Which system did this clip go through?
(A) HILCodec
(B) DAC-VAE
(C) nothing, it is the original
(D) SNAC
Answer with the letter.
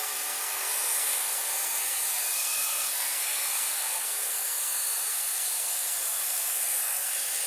D